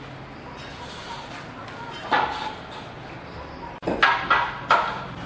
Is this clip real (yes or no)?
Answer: yes